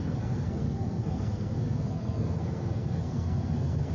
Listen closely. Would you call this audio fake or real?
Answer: fake